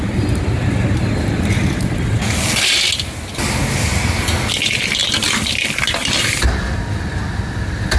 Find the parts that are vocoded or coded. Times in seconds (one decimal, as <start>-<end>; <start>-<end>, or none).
none

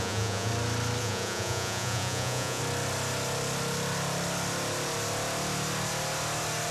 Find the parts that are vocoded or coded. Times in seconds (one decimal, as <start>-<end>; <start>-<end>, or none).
0.0-0.5; 1.0-2.6

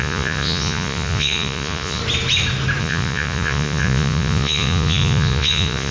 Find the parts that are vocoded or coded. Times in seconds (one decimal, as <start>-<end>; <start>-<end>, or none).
0.0-2.0; 2.8-5.9

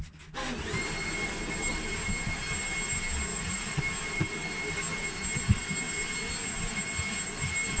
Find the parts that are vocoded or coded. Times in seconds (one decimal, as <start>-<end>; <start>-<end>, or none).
3.3-3.8

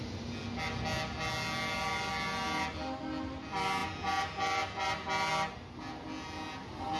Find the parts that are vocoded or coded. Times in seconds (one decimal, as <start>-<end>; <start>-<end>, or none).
none